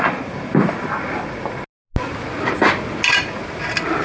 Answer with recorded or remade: recorded